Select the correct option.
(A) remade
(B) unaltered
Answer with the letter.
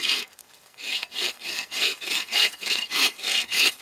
A